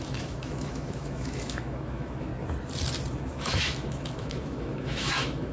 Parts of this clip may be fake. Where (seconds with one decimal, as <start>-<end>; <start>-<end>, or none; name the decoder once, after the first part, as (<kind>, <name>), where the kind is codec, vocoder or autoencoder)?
0.0-2.3 (autoencoder, DAC-VAE); 3.1-5.5